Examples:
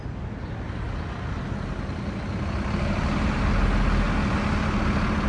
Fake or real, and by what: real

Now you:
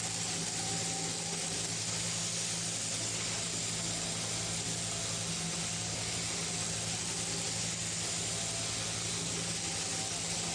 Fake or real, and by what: real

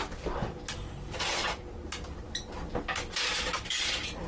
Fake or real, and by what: real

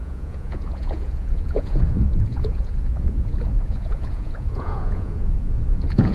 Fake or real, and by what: fake, vocoder, Vocos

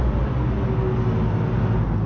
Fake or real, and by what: real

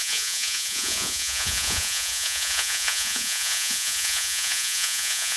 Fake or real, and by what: fake, vocoder, Vocos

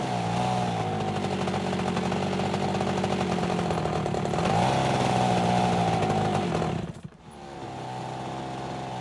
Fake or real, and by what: real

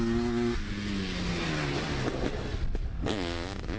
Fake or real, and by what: real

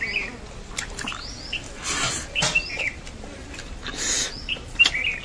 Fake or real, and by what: real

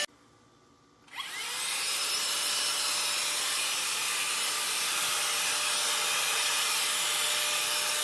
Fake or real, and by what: real